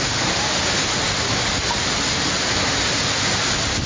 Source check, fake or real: real